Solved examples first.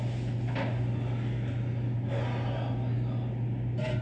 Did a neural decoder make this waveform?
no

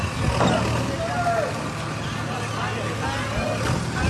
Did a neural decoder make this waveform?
no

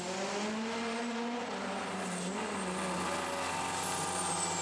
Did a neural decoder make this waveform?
no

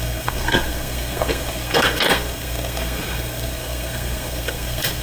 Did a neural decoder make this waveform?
yes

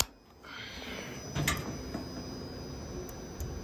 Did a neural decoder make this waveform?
no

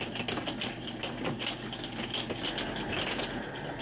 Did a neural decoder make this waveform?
no